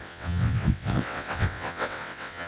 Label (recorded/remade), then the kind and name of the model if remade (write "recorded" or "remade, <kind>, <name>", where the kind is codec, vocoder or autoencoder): remade, vocoder, WaveNeXt